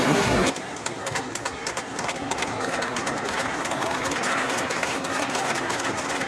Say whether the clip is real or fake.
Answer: fake